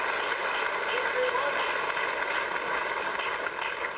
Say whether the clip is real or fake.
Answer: real